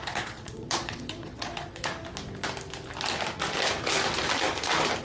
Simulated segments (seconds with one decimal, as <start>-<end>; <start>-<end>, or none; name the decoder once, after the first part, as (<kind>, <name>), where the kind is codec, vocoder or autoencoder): 0.0-1.9 (vocoder, Vocos)